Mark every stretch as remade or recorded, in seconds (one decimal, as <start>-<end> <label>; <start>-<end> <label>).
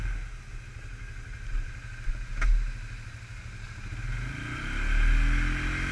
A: 0.0-5.9 recorded